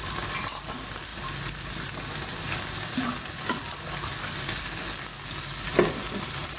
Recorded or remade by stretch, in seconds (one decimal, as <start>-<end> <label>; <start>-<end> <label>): 0.0-6.6 recorded